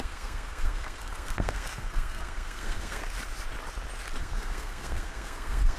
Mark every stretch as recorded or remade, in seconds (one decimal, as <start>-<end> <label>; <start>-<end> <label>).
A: 0.0-3.0 remade; 3.0-4.2 recorded; 4.2-5.8 remade